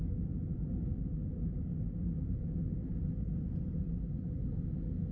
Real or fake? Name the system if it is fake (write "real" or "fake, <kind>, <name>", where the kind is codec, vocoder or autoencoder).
real